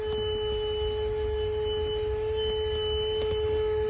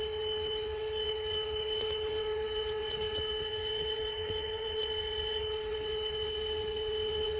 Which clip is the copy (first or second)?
second